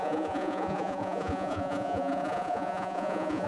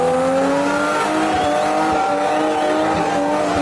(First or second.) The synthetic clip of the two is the first